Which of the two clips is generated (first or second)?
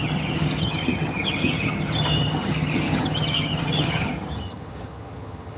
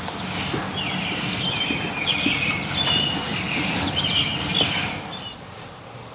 first